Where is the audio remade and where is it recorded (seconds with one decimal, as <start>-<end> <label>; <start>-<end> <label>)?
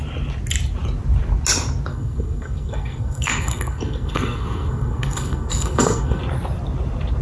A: 0.0-1.9 recorded; 1.9-6.2 remade; 6.2-7.2 recorded